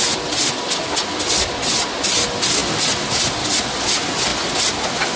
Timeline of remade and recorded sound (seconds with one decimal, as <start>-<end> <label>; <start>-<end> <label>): 0.0-5.2 recorded